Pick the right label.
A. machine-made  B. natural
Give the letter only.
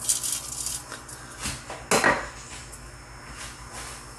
B